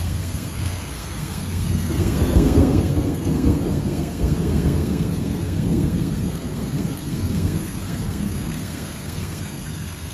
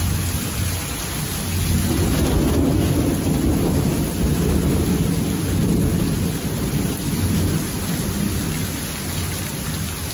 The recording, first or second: second